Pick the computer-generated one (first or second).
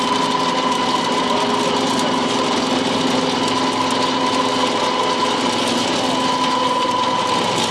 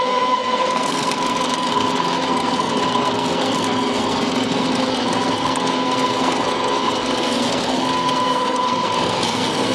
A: second